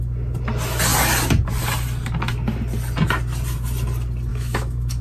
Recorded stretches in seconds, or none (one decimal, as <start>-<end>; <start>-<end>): 0.0-4.3